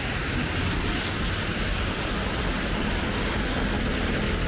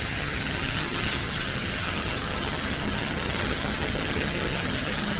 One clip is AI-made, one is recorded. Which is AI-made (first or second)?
second